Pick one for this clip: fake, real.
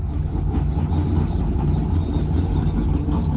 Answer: fake